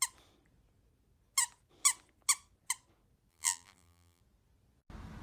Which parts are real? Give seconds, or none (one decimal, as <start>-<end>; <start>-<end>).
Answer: 0.0-3.3; 4.2-5.2